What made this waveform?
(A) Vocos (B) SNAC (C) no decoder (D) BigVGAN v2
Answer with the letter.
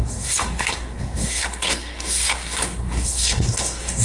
B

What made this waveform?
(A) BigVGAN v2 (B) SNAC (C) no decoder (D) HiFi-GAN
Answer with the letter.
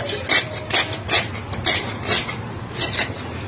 C